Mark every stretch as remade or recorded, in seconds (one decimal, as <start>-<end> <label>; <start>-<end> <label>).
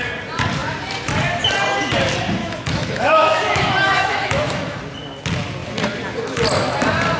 0.0-2.4 recorded; 2.4-4.8 remade; 4.8-7.2 recorded